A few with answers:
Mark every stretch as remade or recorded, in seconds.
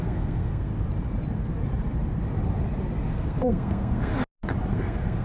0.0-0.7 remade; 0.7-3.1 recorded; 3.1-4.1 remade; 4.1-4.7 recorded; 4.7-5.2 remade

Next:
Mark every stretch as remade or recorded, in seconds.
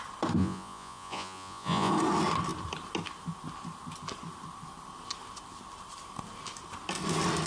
0.0-0.4 recorded; 0.4-1.9 remade; 1.9-7.5 recorded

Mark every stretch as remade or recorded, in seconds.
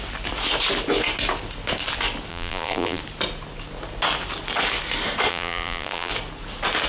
0.0-2.3 recorded; 2.3-3.0 remade; 3.0-5.3 recorded; 5.3-6.1 remade; 6.1-6.9 recorded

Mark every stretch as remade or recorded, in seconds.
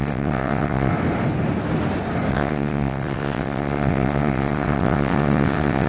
0.0-0.9 remade; 0.9-2.3 recorded; 2.3-5.9 remade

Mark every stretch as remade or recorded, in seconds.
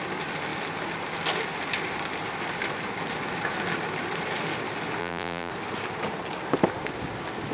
0.0-5.0 recorded; 5.0-5.5 remade; 5.5-7.5 recorded